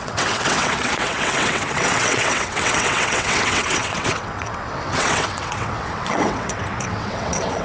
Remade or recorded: remade